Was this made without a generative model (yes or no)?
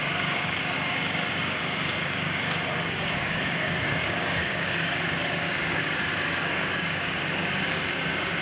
no